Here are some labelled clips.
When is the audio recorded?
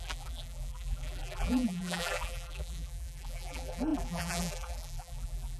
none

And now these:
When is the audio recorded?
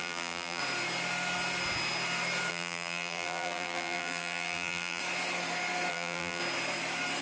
0.6-2.5; 5.0-5.9; 6.4-7.2